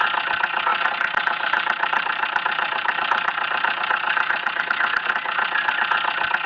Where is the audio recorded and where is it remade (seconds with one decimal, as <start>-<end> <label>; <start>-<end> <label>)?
0.0-0.7 recorded; 0.7-4.6 remade; 4.6-6.5 recorded